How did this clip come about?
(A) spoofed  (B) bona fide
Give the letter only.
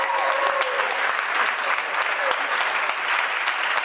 B